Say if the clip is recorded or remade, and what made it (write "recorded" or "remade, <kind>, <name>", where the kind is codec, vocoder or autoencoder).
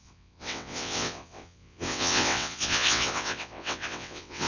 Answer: remade, vocoder, WaveNeXt